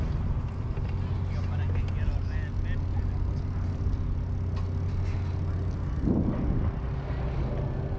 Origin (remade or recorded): recorded